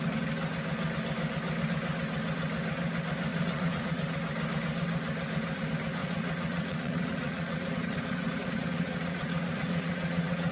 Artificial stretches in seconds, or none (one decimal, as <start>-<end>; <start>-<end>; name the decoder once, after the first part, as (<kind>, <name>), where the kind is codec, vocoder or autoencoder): 3.3-4.0 (vocoder, Vocos); 6.0-10.5

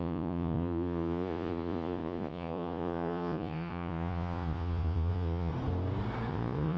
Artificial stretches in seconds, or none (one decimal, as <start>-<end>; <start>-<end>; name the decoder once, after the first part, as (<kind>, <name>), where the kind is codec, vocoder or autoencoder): 0.0-5.5 (vocoder, Vocos); 6.3-6.8